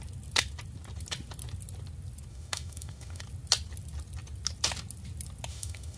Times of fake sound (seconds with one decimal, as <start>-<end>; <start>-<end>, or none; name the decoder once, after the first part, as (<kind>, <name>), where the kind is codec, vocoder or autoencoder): 2.3-3.2 (autoencoder, DAC-VAE); 5.5-6.0